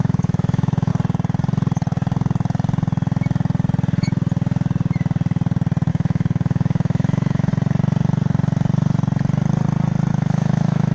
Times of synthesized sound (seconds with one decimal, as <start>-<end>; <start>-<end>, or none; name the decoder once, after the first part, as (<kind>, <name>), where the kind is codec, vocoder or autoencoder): 0.0-0.9 (autoencoder, DAC-VAE); 5.9-7.5; 10.1-10.9